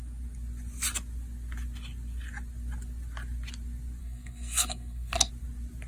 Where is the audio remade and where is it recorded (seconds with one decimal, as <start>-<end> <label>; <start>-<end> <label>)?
0.0-4.0 recorded; 4.0-5.3 remade; 5.3-5.9 recorded